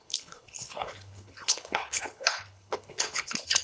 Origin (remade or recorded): remade